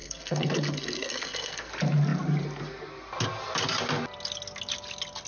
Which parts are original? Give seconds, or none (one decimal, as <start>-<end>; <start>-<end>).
1.7-5.3